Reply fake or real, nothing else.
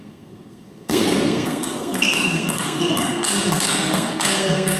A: fake